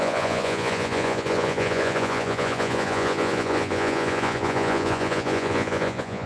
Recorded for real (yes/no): no